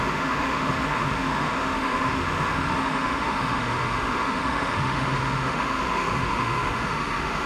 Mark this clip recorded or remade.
remade